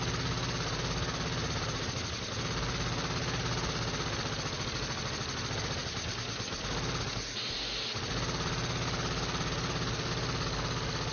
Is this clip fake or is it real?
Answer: real